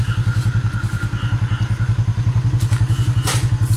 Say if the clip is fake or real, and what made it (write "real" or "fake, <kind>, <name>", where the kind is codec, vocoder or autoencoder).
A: real